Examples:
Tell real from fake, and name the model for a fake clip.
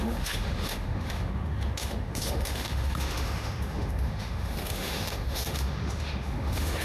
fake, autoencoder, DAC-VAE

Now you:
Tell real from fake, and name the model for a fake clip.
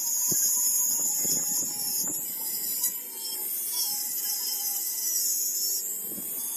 fake, vocoder, BigVGAN v2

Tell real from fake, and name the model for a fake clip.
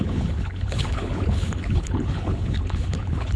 fake, codec, HILCodec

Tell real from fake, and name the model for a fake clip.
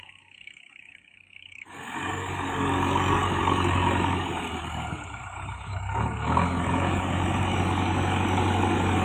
fake, codec, DAC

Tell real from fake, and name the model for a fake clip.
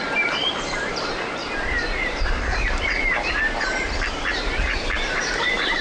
fake, vocoder, BigVGAN v2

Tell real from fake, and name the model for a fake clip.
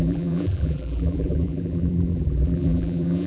fake, vocoder, BigVGAN v2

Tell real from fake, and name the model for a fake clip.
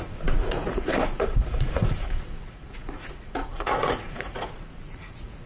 fake, vocoder, Vocos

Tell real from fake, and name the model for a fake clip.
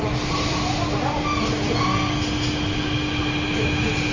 real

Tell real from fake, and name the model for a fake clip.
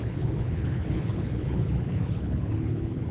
fake, codec, HILCodec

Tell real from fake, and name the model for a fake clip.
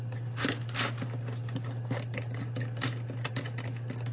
real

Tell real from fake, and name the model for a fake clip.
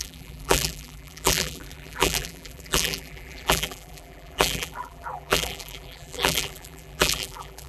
fake, vocoder, BigVGAN v2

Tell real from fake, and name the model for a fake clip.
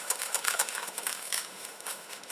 fake, autoencoder, DAC-VAE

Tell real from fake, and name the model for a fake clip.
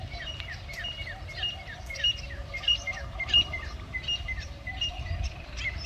fake, vocoder, BigVGAN v2